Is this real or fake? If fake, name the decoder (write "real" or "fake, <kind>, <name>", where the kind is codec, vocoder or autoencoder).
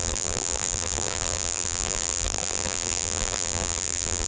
fake, vocoder, BigVGAN v2